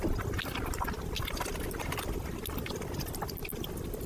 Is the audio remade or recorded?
recorded